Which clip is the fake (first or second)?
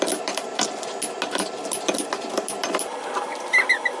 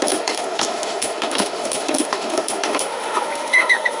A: second